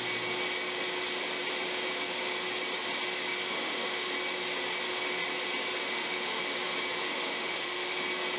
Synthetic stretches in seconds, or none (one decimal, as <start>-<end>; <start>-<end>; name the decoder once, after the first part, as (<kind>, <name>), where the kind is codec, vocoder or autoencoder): 3.3-4.1 (autoencoder, DAC-VAE); 5.8-6.4; 7.0-8.0

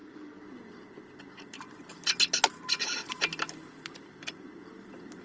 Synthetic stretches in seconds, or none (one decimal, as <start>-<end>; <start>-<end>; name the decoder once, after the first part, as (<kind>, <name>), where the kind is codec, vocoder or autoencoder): none

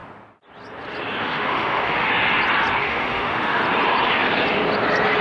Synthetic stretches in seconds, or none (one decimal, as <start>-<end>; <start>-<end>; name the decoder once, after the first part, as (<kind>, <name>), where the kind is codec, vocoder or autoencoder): 1.2-2.1 (autoencoder, DAC-VAE); 2.8-3.6

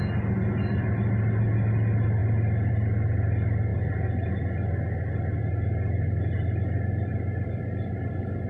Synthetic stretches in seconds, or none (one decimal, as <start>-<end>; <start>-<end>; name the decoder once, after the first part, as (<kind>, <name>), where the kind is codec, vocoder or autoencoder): none

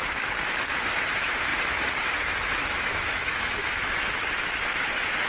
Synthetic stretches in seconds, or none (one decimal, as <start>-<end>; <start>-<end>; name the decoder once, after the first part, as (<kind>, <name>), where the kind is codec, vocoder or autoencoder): 0.0-5.3 (autoencoder, DAC-VAE)

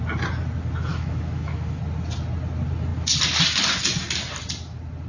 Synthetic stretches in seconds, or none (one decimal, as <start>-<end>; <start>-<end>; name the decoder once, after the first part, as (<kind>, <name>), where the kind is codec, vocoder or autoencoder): 0.9-1.8 (autoencoder, DAC-VAE)